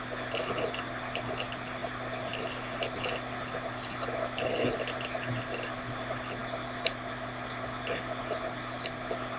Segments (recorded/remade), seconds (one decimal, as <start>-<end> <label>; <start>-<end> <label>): 0.0-9.4 recorded